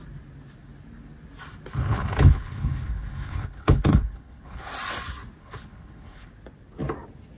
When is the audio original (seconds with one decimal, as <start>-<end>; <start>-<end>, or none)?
0.0-1.8; 4.7-5.4; 6.3-7.4